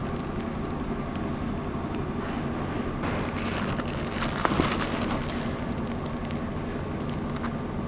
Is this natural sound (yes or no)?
yes